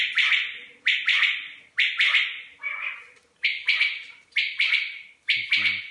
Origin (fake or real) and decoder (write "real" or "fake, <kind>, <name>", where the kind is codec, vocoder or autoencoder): real